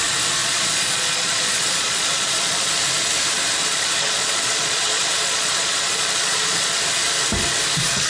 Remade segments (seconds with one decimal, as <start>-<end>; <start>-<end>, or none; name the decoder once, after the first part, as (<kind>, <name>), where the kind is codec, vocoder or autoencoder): 0.4-2.7 (vocoder, Vocos); 3.6-6.8